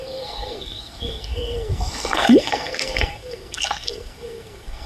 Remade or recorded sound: remade